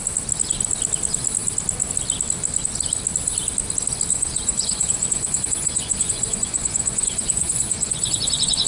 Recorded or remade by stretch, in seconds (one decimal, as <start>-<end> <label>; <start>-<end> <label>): 0.0-4.1 recorded; 4.1-8.7 remade